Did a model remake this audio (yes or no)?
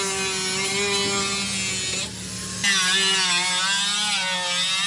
no